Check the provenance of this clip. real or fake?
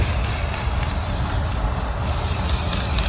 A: fake